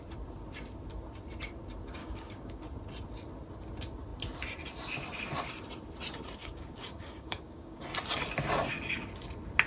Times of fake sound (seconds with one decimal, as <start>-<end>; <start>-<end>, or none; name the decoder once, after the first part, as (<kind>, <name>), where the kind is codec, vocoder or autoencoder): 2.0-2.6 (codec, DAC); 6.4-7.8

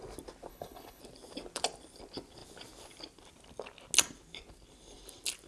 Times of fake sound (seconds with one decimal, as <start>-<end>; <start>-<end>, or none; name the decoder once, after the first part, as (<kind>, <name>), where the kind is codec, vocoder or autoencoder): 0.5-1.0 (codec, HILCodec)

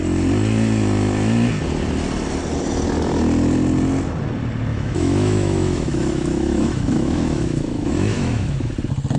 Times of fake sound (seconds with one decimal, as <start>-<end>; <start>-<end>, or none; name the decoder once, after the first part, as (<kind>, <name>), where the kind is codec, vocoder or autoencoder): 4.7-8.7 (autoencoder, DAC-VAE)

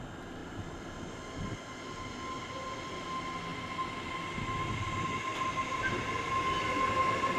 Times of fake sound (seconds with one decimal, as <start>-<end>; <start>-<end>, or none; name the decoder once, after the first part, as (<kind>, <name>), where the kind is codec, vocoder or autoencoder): 0.4-2.1 (vocoder, BigVGAN v2); 5.3-6.2

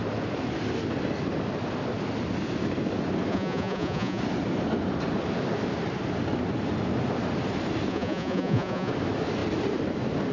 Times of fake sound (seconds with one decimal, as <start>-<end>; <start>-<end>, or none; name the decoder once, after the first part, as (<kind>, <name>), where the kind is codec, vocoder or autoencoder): 3.3-4.2 (vocoder, Vocos); 7.9-8.9